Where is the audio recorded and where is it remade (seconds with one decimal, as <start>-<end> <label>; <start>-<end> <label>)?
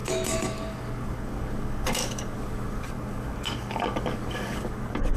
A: 0.0-5.2 remade